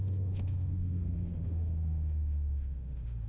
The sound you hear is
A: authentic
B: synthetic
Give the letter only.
B